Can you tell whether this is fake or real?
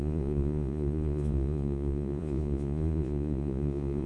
fake